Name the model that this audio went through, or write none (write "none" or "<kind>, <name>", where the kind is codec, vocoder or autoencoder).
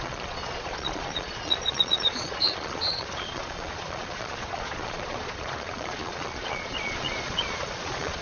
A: vocoder, Vocos